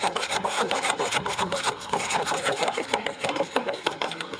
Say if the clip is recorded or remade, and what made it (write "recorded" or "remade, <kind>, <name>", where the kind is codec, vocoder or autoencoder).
remade, codec, SNAC